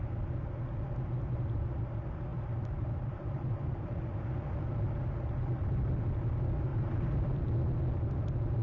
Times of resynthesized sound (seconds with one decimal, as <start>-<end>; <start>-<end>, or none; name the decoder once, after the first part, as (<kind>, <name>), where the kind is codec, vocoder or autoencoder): 2.3-4.0 (vocoder, BigVGAN v2); 6.7-7.4